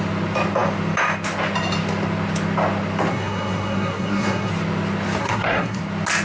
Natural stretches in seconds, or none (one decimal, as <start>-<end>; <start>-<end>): 0.0-3.1; 4.5-5.2; 5.8-6.2